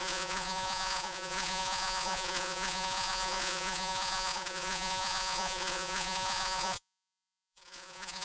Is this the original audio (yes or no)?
no